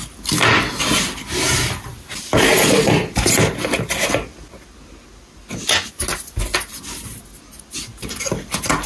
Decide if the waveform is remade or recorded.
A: recorded